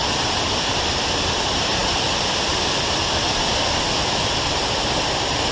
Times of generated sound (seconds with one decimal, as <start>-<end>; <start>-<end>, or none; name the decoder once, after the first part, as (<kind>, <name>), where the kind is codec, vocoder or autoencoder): 0.0-5.5 (vocoder, BigVGAN v2)